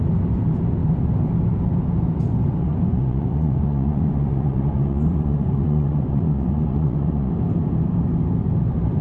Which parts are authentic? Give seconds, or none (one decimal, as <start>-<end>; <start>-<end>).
0.0-2.6; 7.3-9.0